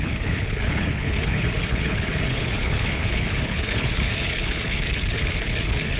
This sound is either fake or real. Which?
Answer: fake